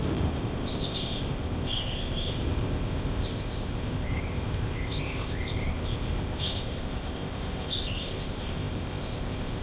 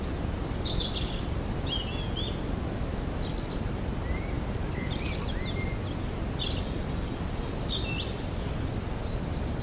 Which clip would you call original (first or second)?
second